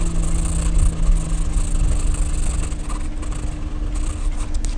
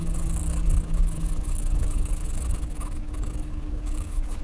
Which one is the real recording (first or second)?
first